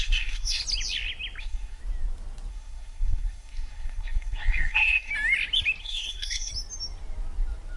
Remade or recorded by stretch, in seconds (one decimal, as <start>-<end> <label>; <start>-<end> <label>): 0.0-0.6 remade; 0.6-1.4 recorded; 1.4-1.8 remade; 1.8-2.5 recorded; 2.5-5.1 remade; 5.1-5.8 recorded; 5.8-6.5 remade; 6.5-7.8 recorded

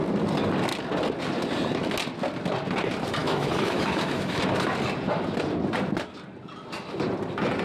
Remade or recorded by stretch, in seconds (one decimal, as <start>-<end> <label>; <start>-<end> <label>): 0.0-3.2 recorded; 3.2-4.4 remade; 4.4-7.6 recorded

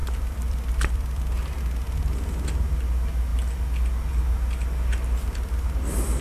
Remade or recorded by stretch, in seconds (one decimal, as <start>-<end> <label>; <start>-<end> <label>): 0.0-1.6 remade; 1.6-6.2 recorded

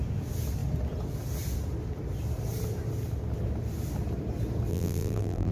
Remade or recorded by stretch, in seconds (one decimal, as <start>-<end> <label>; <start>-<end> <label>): 0.0-4.7 recorded; 4.7-5.5 remade

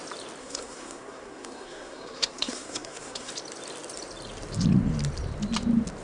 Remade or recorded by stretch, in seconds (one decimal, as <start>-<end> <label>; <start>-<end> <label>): 0.0-0.4 recorded; 0.4-3.3 remade; 3.3-6.0 recorded

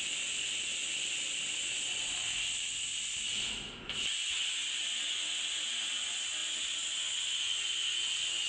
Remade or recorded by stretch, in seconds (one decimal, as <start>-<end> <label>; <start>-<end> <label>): 0.0-8.5 recorded

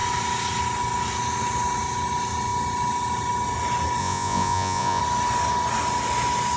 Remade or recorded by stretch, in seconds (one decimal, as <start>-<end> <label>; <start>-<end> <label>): 0.0-4.0 recorded; 4.0-5.0 remade; 5.0-6.6 recorded